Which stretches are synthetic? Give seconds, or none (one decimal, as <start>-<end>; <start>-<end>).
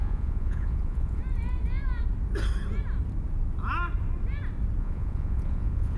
0.0-1.2; 4.8-6.0